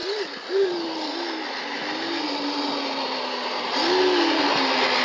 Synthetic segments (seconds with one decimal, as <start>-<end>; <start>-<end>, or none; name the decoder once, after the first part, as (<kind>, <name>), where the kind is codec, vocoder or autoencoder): none